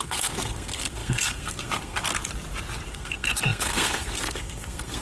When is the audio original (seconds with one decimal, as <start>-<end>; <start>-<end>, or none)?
2.1-2.9